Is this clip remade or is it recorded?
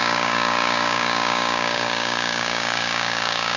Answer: remade